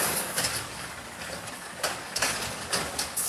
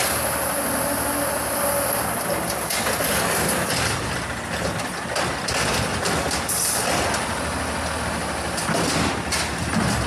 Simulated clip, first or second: first